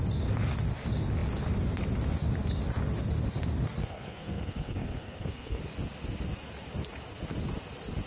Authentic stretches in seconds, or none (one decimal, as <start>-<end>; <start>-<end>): 0.0-3.8; 5.6-8.1